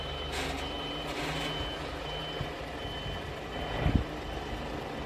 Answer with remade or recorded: recorded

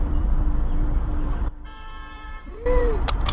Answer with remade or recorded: remade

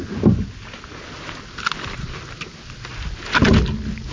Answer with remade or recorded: recorded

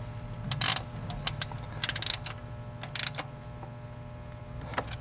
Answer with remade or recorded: recorded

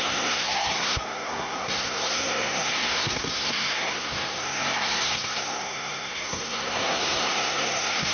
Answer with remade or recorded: remade